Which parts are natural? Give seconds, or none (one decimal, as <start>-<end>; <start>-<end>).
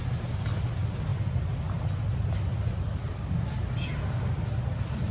0.0-5.1